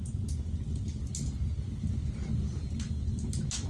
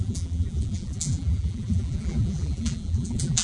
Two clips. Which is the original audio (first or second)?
first